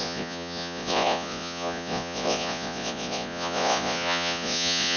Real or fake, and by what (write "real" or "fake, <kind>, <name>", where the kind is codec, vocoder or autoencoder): fake, vocoder, Vocos